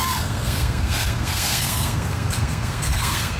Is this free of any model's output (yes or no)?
no